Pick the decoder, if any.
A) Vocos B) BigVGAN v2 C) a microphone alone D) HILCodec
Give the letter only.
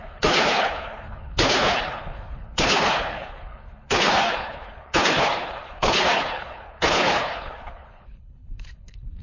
D